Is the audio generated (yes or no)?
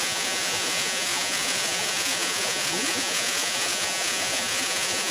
yes